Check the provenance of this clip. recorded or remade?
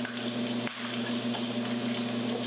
recorded